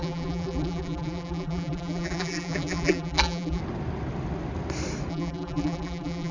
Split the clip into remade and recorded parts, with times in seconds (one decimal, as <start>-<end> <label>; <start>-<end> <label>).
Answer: 0.0-3.6 remade; 3.6-5.1 recorded; 5.1-6.3 remade